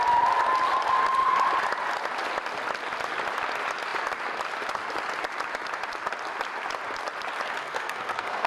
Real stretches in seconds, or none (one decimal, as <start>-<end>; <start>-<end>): 0.0-7.6